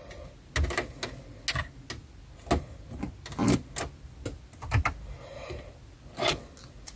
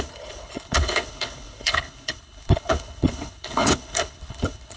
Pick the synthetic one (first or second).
second